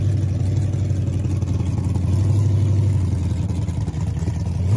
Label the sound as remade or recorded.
recorded